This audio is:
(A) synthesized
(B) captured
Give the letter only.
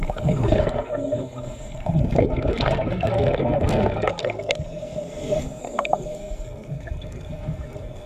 A